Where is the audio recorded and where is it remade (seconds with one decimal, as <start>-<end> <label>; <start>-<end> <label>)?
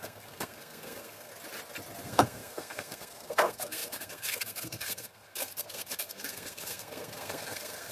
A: 0.0-1.3 remade; 1.3-2.0 recorded; 2.0-7.9 remade